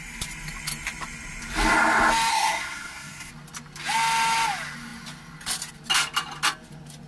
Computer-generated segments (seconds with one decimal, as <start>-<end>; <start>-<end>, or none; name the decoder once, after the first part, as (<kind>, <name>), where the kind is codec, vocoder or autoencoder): 2.3-3.3 (codec, SNAC)